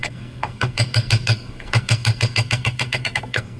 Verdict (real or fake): fake